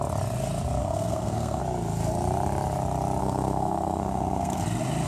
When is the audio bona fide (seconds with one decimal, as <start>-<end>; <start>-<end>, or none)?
0.0-0.8; 1.6-3.2; 4.6-5.1